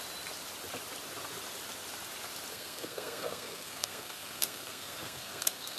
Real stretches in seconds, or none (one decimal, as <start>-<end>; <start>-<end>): 0.0-2.5